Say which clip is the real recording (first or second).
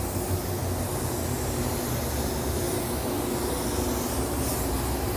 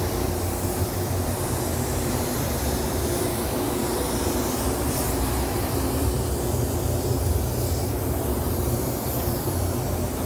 first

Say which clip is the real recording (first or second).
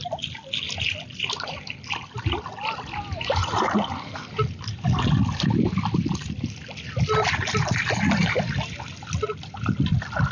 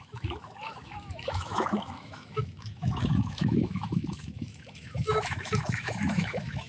first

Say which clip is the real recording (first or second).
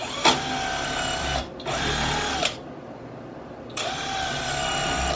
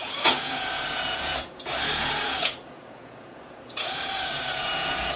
first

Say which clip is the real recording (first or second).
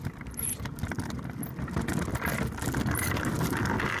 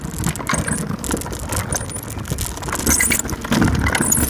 second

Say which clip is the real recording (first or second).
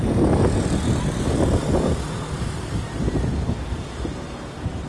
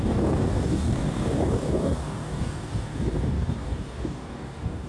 first